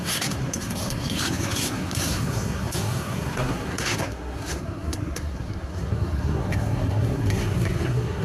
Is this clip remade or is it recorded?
remade